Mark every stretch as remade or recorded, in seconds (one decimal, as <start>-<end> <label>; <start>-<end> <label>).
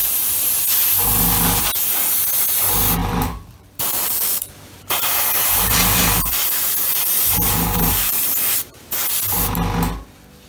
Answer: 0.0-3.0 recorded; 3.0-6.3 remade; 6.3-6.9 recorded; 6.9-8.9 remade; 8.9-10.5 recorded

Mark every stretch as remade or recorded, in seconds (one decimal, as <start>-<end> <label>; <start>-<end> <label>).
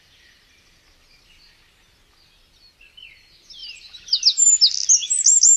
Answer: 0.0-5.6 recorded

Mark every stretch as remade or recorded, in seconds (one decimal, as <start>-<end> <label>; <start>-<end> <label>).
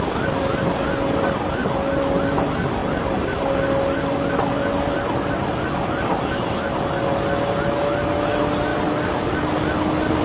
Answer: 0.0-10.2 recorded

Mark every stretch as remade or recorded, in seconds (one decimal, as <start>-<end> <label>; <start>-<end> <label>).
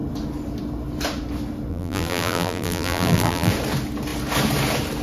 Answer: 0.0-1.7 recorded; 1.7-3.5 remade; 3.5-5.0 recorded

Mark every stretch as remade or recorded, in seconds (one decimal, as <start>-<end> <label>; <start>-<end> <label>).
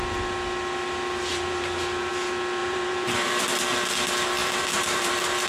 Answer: 0.0-1.3 recorded; 1.3-2.1 remade; 2.1-2.6 recorded; 2.6-3.4 remade; 3.4-4.4 recorded; 4.4-5.5 remade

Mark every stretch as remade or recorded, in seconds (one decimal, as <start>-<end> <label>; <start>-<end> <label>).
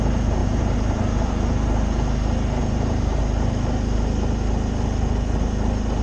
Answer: 0.0-0.4 recorded; 0.4-1.3 remade; 1.3-2.6 recorded; 2.6-3.2 remade; 3.2-6.0 recorded